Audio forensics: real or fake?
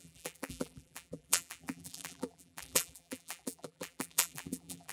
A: fake